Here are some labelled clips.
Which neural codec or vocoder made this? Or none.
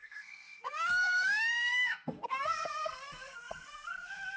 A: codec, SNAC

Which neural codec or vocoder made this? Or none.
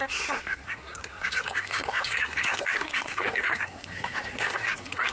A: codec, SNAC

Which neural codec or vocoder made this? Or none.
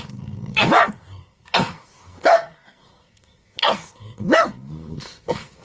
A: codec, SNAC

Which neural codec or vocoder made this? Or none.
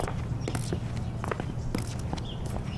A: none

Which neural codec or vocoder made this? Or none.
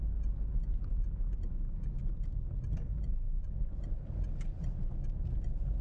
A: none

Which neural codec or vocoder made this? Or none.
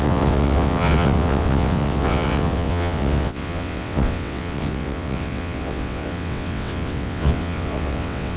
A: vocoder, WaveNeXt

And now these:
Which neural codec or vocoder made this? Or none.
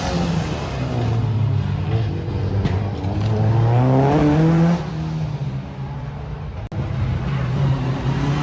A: none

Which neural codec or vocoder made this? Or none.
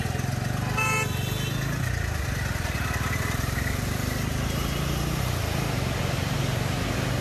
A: none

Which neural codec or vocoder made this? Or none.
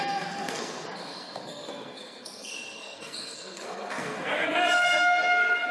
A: codec, SNAC